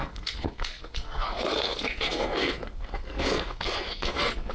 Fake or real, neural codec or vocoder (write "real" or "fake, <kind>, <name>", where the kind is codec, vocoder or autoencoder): fake, codec, SNAC